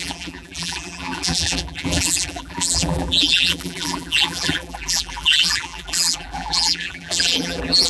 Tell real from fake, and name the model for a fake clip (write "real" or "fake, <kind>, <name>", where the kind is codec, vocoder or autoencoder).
fake, vocoder, BigVGAN v2